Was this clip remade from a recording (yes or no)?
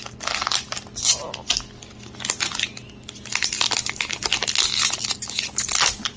no